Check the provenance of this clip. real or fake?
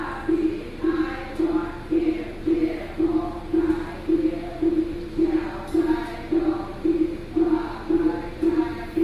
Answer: real